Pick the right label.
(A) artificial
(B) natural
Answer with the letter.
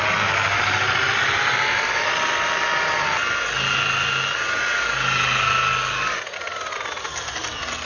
B